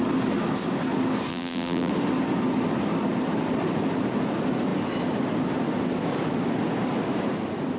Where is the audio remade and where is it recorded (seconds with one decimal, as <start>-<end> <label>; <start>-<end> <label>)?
0.0-1.3 recorded; 1.3-1.9 remade; 1.9-7.8 recorded